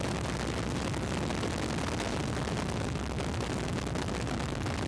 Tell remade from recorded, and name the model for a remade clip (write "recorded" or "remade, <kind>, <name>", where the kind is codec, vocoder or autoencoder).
recorded